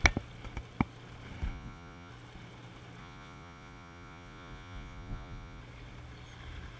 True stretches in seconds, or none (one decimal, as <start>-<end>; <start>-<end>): 0.0-1.5; 2.1-3.0; 5.6-6.8

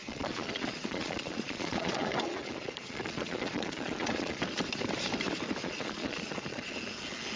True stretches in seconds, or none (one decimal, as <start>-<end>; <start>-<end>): 4.4-5.6; 6.7-7.4

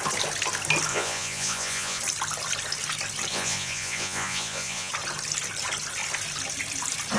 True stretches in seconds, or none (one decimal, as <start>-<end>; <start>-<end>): 0.0-0.9; 2.0-3.3; 4.9-7.2